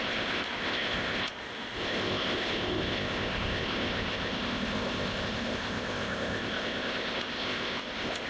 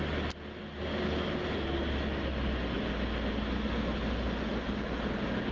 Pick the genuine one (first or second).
second